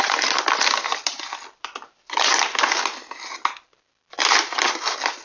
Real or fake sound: real